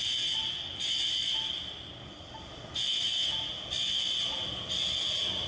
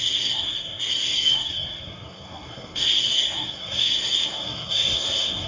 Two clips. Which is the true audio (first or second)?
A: first